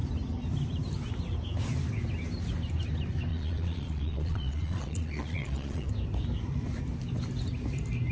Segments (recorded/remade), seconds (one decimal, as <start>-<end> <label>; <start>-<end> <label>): 0.0-3.3 recorded; 3.3-5.9 remade; 5.9-8.1 recorded